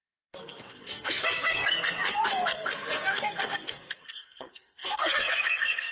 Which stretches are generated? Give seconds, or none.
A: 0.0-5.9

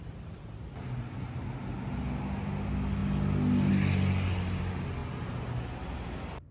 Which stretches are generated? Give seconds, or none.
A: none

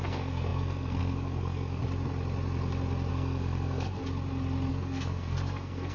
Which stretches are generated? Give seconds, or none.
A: 0.0-1.8; 3.1-4.0; 4.7-5.9

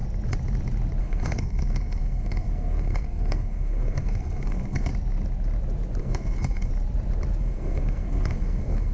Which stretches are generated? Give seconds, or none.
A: 1.0-4.9; 6.0-6.7; 7.4-8.9